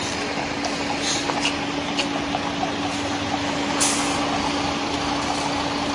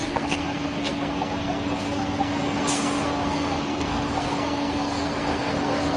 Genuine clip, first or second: first